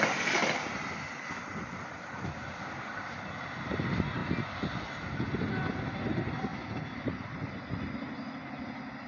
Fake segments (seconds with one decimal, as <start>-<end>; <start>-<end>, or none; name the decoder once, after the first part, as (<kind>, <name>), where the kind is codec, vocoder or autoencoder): none